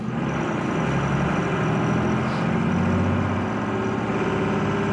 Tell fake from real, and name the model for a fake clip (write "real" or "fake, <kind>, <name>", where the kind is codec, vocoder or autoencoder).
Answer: real